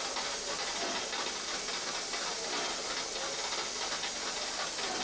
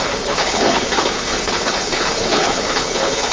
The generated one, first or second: second